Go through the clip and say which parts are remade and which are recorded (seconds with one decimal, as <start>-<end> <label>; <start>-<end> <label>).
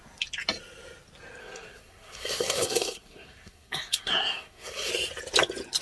0.0-1.4 recorded; 1.4-4.9 remade; 4.9-5.8 recorded